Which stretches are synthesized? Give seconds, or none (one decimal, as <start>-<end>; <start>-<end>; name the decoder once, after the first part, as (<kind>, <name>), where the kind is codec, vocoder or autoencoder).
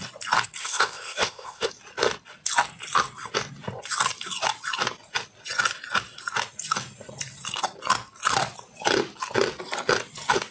0.6-1.7 (codec, ZipCodec)